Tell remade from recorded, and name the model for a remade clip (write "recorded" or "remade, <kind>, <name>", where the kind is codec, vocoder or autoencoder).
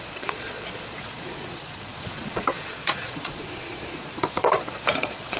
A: remade, vocoder, Vocos